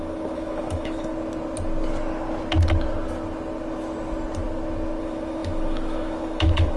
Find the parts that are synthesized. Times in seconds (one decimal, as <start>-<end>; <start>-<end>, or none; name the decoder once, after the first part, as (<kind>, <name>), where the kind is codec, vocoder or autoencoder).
0.0-1.1 (autoencoder, DAC-VAE); 5.0-6.8